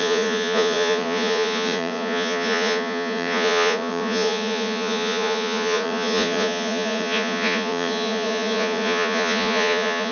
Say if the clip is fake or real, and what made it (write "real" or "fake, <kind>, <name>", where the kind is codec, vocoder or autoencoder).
fake, vocoder, Vocos